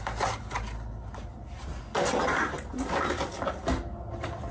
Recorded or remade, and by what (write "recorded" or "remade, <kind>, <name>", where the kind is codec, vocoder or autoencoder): recorded